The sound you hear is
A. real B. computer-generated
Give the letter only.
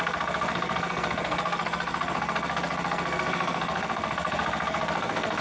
B